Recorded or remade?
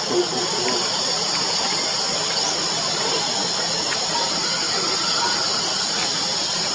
recorded